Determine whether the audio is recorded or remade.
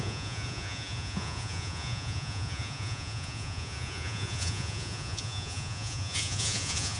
remade